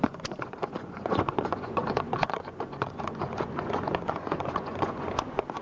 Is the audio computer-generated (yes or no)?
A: yes